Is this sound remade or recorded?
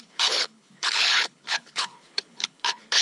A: remade